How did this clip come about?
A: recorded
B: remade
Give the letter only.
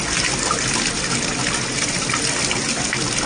A